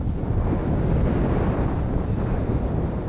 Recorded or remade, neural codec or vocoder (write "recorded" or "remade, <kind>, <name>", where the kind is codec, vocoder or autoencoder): recorded